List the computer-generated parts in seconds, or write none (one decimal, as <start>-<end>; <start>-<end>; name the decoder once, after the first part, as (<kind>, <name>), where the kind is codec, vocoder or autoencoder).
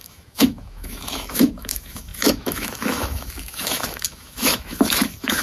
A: 0.0-5.4 (autoencoder, DAC-VAE)